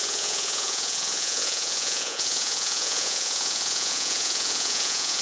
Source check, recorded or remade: remade